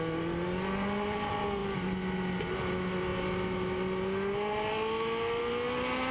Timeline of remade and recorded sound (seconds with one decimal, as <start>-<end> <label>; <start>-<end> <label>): 0.0-6.1 recorded